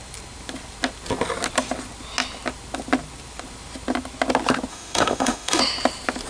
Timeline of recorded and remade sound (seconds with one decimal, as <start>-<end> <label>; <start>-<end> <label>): 0.0-4.7 recorded; 4.7-5.6 remade; 5.6-6.3 recorded